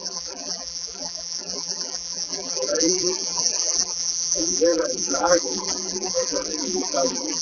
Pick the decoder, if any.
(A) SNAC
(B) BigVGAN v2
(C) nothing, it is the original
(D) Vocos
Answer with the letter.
B